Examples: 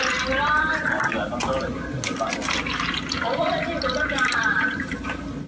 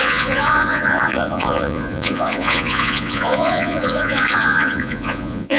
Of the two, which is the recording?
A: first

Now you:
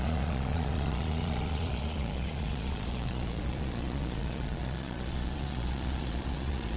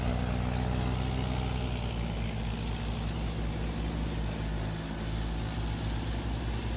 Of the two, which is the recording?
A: second